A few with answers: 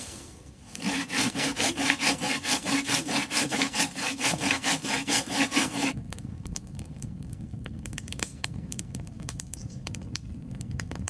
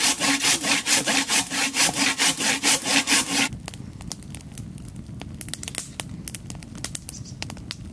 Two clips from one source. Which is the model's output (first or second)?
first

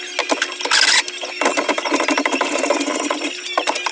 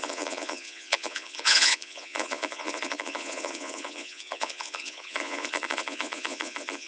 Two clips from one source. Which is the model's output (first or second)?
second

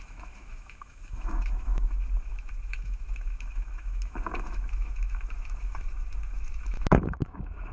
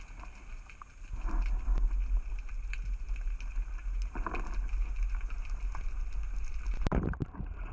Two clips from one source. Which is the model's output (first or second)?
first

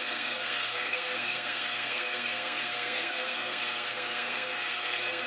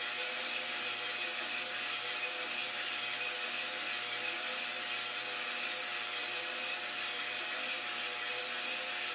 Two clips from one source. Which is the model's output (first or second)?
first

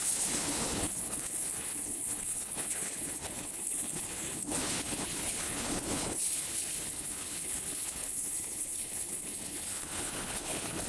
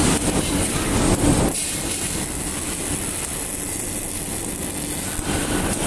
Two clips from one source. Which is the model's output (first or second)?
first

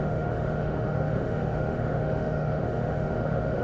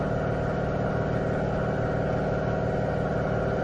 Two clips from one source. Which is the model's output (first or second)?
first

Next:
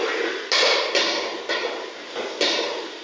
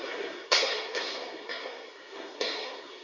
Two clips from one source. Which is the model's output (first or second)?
second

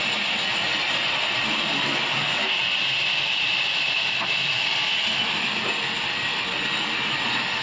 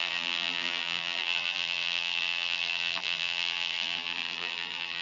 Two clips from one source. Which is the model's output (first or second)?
second